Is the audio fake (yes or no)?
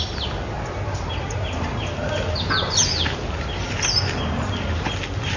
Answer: no